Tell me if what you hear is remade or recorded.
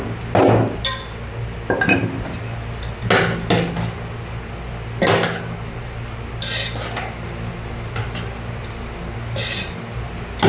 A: recorded